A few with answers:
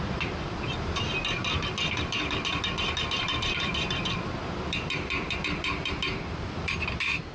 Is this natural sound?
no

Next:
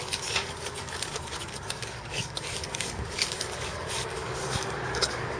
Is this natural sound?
no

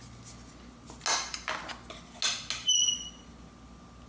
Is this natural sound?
yes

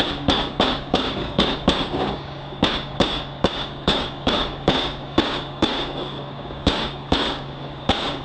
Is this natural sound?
no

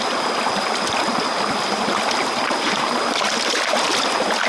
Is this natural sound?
yes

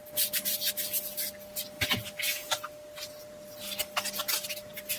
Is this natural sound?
yes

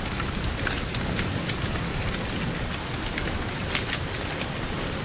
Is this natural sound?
yes